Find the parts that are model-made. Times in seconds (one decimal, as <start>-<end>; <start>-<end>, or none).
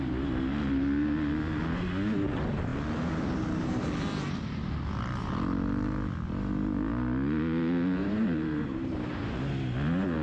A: 8.0-9.3